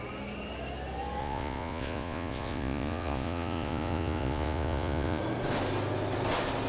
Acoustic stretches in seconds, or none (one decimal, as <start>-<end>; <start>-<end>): 0.0-1.2; 5.2-6.7